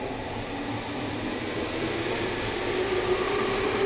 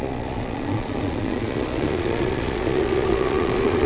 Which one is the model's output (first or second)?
second